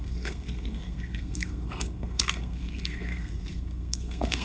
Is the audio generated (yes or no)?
yes